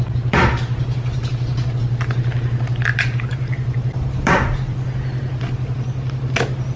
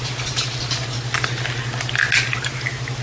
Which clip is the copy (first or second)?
first